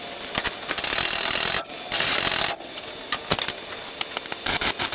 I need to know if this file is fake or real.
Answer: real